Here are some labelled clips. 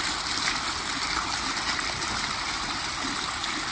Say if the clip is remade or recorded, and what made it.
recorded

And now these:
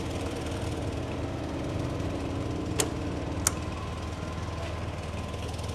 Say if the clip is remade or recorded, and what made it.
recorded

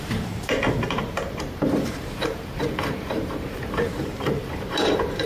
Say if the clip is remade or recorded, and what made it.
remade, vocoder, BigVGAN v2